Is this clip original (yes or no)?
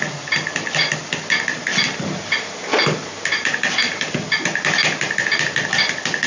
yes